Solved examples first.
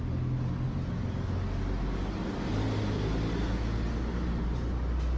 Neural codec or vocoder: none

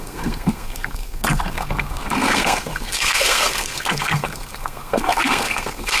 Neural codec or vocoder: codec, SNAC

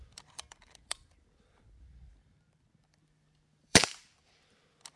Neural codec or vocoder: vocoder, BigVGAN v2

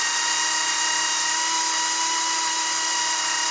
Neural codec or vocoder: none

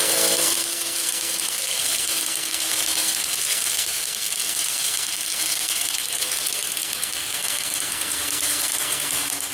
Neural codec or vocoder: codec, SNAC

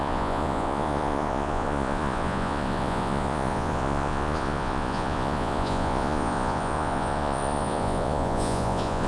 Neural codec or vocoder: vocoder, Vocos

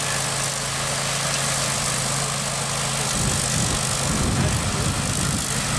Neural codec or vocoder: none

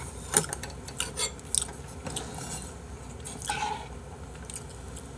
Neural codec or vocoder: none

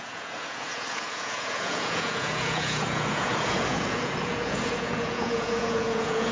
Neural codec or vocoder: vocoder, Vocos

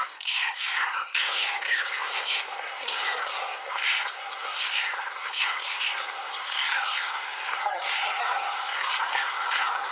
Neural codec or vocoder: codec, SNAC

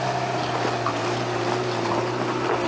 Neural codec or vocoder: none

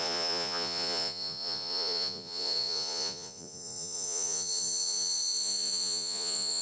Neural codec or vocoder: vocoder, Vocos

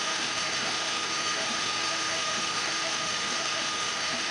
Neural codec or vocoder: autoencoder, DAC-VAE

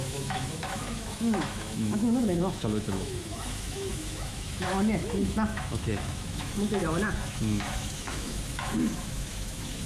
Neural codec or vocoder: autoencoder, DAC-VAE